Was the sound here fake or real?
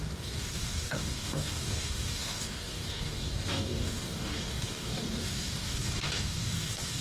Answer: fake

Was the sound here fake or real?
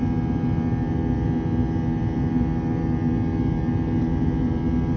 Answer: real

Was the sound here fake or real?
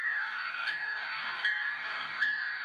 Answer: fake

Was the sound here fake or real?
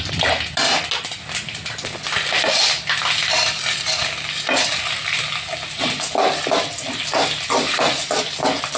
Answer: real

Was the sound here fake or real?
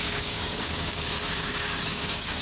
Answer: fake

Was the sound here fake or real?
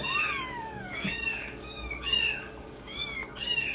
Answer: fake